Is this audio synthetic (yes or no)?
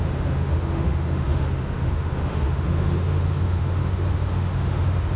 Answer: yes